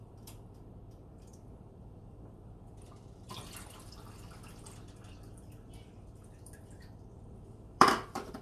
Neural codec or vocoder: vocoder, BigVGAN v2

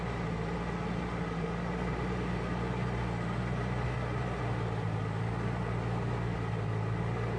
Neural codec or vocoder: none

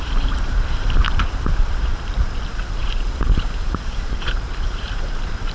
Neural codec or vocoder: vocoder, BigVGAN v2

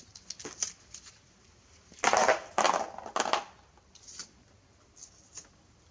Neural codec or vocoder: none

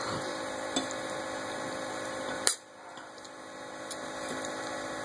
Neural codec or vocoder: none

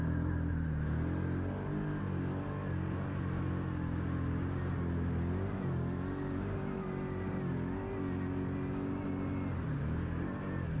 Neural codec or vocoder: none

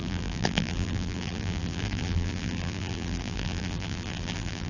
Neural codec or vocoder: vocoder, BigVGAN v2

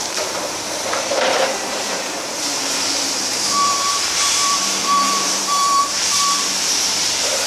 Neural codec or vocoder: vocoder, BigVGAN v2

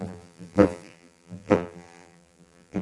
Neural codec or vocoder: vocoder, BigVGAN v2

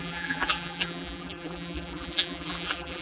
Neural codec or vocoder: vocoder, BigVGAN v2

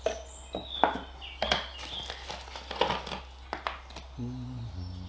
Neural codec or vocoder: none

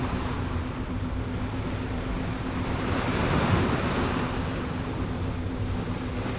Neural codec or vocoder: vocoder, BigVGAN v2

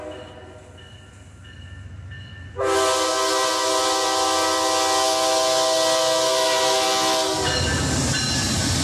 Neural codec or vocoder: none